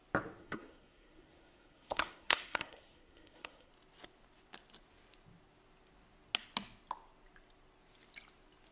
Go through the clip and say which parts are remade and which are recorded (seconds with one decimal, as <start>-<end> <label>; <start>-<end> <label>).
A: 0.0-0.4 recorded; 0.4-3.7 remade; 3.7-8.7 recorded